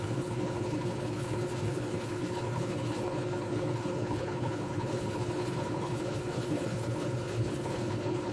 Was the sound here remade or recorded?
remade